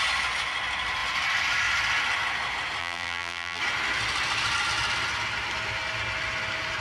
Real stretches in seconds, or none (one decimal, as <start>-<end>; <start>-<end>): 0.0-2.8; 3.6-6.8